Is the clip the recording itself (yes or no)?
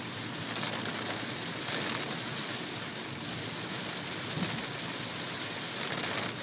yes